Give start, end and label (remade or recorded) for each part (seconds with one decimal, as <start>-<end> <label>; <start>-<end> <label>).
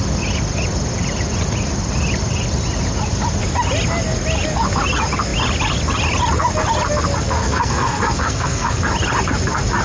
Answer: 0.0-7.4 recorded; 7.4-8.8 remade; 8.8-9.8 recorded